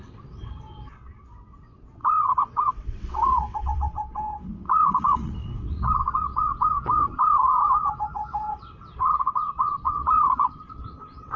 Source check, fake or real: fake